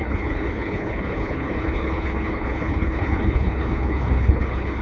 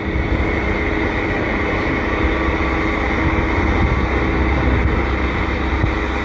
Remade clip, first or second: first